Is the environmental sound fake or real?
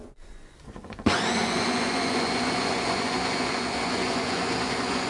fake